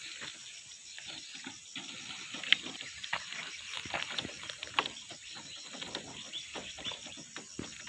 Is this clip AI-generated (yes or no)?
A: no